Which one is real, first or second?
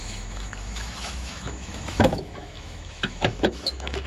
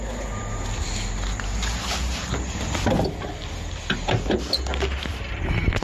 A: second